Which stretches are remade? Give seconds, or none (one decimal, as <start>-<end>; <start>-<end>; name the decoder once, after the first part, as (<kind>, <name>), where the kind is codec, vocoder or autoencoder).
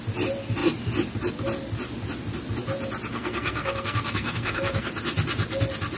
3.1-4.9 (codec, SNAC)